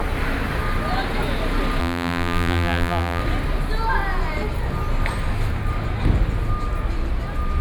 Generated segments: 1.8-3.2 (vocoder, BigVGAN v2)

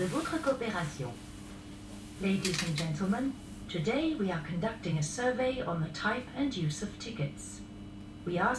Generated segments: 2.4-5.5 (vocoder, BigVGAN v2)

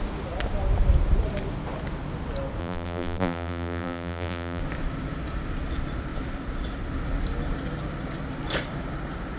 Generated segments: 2.6-4.6 (vocoder, BigVGAN v2)

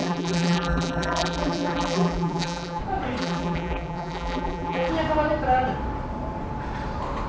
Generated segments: 0.0-2.8 (vocoder, BigVGAN v2); 3.2-4.9

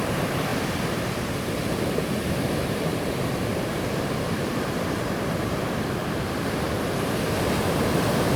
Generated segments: 0.0-8.4 (vocoder, BigVGAN v2)

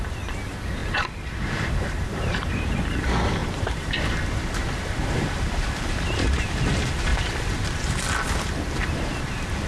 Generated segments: 0.8-2.5 (vocoder, BigVGAN v2); 3.4-4.0; 4.6-6.5; 7.1-8.0

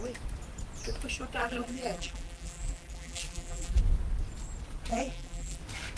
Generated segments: 1.4-3.8 (vocoder, BigVGAN v2); 4.9-5.6